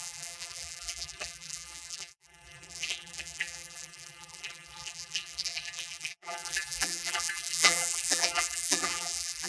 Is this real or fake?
fake